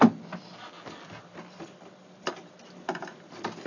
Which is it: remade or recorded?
recorded